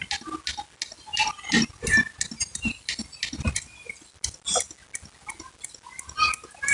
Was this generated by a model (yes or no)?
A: no